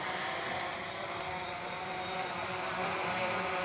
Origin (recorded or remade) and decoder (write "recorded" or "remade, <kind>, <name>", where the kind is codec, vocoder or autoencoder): remade, vocoder, BigVGAN v2